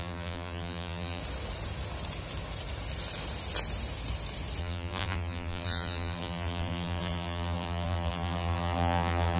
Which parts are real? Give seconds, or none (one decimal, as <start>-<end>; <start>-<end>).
1.2-4.6